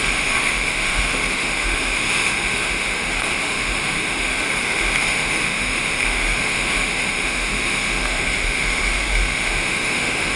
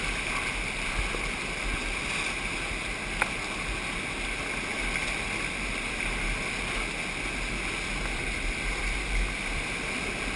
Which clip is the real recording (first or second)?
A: second